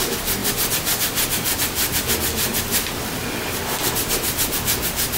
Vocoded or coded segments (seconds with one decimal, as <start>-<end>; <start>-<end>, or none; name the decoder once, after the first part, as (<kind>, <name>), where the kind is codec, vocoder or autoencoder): 0.4-2.1 (vocoder, BigVGAN v2); 2.5-3.9